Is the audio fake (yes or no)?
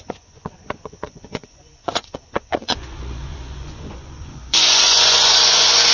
yes